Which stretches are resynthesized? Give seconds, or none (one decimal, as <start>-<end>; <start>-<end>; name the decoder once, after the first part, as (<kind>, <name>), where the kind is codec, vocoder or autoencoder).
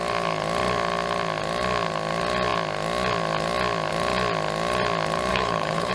5.3-5.9 (codec, HILCodec)